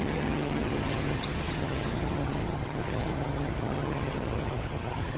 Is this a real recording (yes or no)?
no